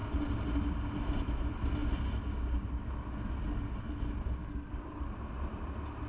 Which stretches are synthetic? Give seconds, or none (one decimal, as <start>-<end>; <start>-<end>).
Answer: none